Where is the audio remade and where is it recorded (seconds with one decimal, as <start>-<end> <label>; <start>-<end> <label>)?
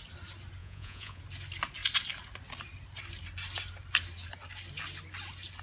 0.0-0.6 recorded; 0.6-1.2 remade; 1.2-5.6 recorded